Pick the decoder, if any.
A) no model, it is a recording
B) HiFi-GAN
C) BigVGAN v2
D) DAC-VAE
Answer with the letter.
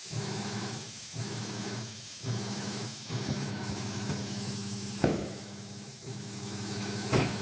D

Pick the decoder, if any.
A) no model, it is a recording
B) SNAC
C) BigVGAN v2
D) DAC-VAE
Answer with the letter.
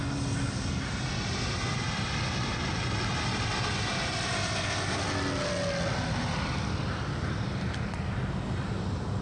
A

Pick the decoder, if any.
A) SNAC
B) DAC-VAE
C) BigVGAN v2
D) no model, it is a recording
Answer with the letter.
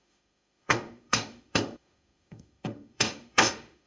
B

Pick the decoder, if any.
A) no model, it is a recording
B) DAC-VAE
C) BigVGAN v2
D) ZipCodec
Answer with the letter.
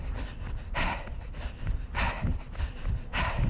A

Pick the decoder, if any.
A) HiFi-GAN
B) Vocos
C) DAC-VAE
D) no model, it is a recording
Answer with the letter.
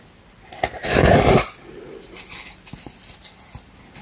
D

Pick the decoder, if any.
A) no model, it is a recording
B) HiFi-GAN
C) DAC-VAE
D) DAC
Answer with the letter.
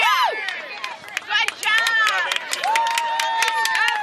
A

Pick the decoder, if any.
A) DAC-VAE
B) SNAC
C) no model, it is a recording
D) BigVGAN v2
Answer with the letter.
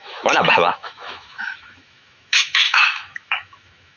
A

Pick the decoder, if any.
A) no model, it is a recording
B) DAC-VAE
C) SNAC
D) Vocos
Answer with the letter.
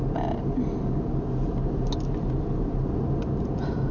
A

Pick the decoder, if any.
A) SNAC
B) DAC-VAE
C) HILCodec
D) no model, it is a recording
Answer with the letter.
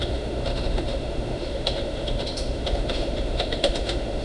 B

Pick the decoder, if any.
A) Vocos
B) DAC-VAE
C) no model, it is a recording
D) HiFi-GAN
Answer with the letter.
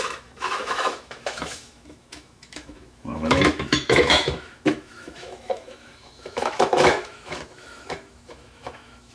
B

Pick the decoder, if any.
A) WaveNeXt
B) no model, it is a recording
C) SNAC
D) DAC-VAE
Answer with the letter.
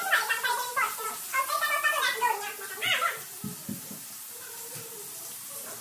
B